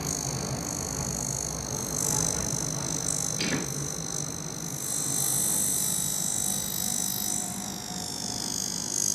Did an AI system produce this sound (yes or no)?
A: no